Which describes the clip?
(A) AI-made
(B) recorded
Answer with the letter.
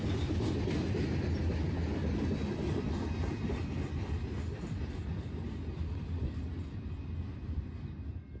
B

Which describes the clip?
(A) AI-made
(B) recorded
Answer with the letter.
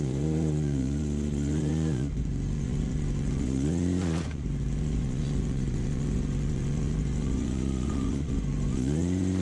A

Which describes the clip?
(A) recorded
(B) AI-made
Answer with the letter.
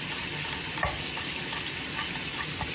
A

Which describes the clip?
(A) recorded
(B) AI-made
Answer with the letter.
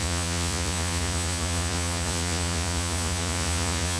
B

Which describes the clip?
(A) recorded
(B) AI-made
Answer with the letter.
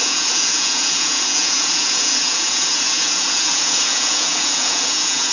B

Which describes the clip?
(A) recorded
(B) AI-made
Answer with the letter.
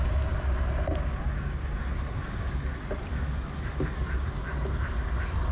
A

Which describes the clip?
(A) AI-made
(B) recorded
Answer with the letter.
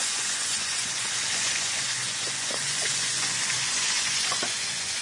A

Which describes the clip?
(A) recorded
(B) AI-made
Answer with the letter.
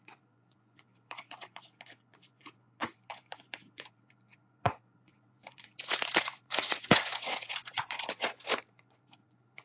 B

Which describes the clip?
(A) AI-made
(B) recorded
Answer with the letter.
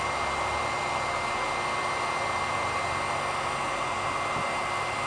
B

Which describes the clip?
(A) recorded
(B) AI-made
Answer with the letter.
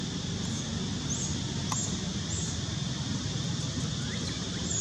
A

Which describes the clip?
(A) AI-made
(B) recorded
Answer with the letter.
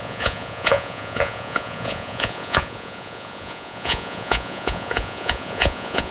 A